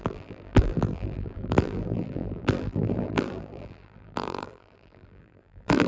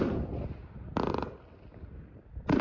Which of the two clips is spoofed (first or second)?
first